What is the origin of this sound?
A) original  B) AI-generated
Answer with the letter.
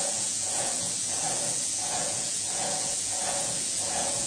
B